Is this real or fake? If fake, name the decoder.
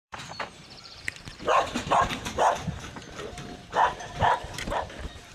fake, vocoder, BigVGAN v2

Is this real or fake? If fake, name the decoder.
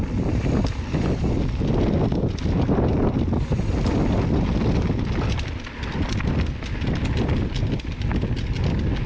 real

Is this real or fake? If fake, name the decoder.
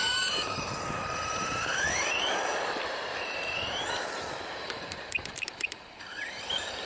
fake, vocoder, BigVGAN v2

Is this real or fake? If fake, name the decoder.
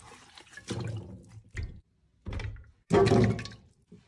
real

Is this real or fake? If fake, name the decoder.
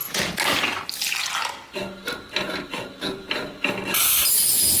real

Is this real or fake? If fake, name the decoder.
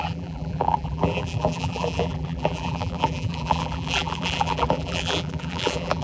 fake, vocoder, BigVGAN v2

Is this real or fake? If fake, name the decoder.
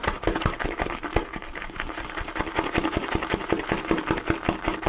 fake, vocoder, BigVGAN v2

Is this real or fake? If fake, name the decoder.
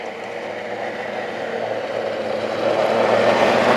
real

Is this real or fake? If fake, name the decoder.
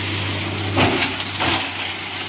real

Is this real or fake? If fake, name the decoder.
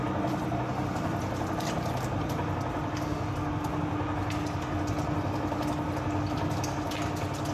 real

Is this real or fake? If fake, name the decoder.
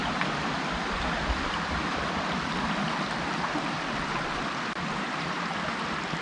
fake, vocoder, BigVGAN v2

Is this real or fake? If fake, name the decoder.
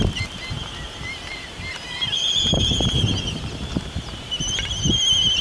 fake, vocoder, BigVGAN v2